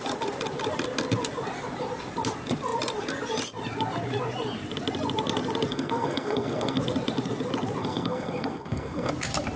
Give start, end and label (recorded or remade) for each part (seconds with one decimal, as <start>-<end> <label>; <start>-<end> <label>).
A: 0.0-5.7 recorded; 5.7-6.8 remade; 6.8-7.8 recorded; 7.8-9.1 remade; 9.1-9.6 recorded